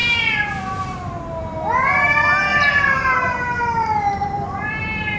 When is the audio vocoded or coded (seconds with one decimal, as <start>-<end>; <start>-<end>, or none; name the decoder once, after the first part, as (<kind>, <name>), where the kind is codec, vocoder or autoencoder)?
0.0-1.2 (vocoder, BigVGAN v2); 2.5-3.6